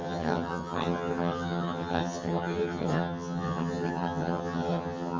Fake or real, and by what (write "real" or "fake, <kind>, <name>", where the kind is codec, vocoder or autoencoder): fake, vocoder, HiFi-GAN